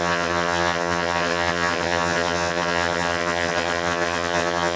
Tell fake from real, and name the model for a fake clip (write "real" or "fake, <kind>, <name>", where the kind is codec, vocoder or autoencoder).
fake, vocoder, HiFi-GAN